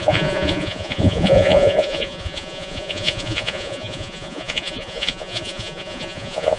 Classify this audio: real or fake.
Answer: fake